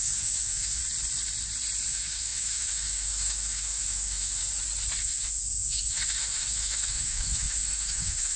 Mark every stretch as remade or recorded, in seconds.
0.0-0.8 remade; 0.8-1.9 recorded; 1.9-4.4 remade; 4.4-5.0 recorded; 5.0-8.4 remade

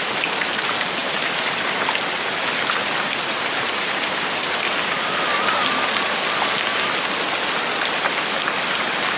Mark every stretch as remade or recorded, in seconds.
0.0-9.2 recorded

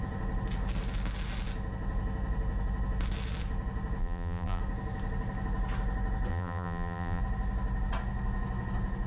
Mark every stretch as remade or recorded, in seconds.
0.0-4.0 recorded; 4.0-4.6 remade; 4.6-6.3 recorded; 6.3-7.2 remade; 7.2-9.1 recorded

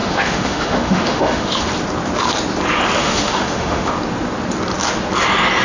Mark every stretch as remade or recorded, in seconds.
0.0-1.6 remade; 1.6-3.0 recorded; 3.0-3.9 remade; 3.9-5.6 recorded

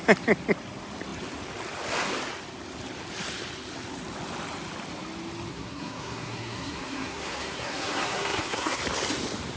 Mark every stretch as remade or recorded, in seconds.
0.0-5.5 recorded; 5.5-8.8 remade; 8.8-9.6 recorded

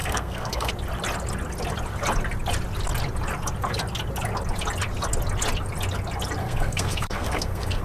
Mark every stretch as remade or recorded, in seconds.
0.0-0.7 remade; 0.7-6.4 recorded; 6.4-7.8 remade

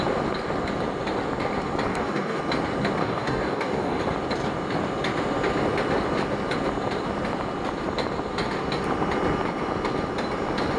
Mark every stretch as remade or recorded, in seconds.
0.0-1.9 recorded; 1.9-2.4 remade; 2.4-3.0 recorded; 3.0-4.0 remade; 4.0-10.8 recorded